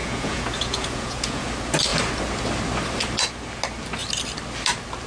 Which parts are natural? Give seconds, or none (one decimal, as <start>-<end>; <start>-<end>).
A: 1.5-5.1